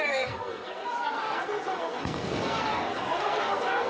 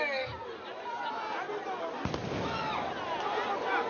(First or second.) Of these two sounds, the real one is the second